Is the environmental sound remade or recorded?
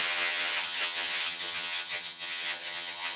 remade